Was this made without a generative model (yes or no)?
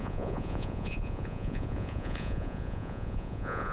no